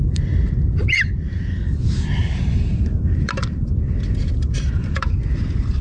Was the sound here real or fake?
fake